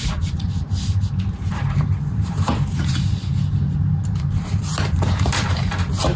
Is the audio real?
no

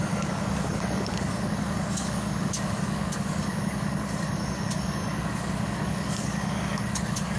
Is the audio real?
no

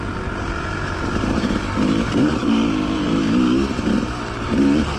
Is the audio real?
no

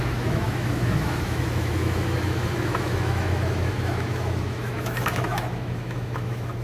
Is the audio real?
no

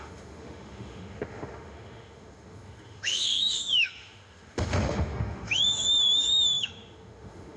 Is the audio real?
no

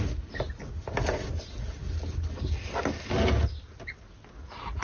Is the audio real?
yes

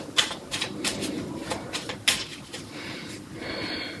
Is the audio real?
yes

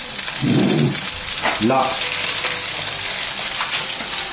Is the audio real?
yes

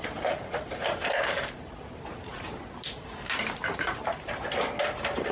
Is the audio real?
no